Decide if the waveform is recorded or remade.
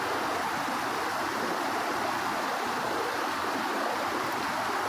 recorded